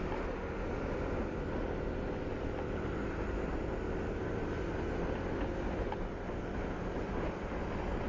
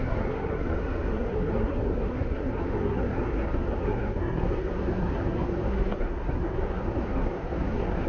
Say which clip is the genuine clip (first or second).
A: first